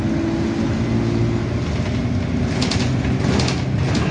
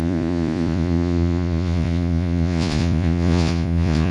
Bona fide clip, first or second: first